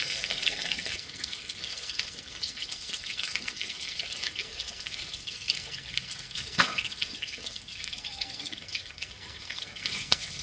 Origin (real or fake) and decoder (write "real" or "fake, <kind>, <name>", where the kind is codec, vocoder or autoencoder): fake, codec, SNAC